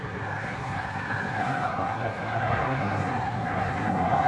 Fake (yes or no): yes